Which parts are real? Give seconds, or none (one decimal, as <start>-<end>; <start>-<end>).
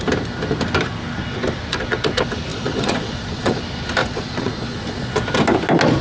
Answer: 0.0-2.5; 3.6-4.0; 5.1-6.0